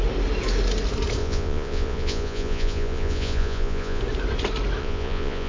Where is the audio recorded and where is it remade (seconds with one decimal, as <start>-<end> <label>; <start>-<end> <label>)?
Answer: 0.0-1.2 recorded; 1.2-4.0 remade; 4.0-4.8 recorded; 4.8-5.5 remade